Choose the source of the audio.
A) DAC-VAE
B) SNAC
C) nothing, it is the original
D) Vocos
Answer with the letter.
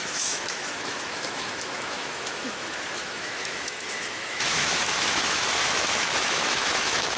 A